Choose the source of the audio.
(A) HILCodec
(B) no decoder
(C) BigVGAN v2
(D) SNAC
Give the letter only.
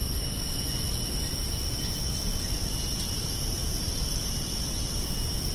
B